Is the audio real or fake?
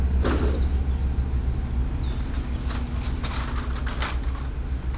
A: real